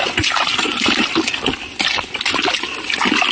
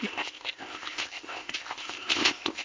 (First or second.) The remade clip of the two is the second